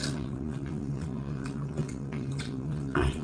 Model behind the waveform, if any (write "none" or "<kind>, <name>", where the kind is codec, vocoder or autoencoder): vocoder, WaveNeXt